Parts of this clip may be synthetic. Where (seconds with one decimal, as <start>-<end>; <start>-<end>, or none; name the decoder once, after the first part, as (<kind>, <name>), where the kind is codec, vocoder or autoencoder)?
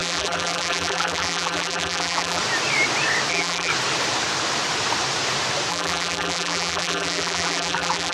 0.0-2.4 (vocoder, BigVGAN v2); 3.3-3.7; 5.7-8.1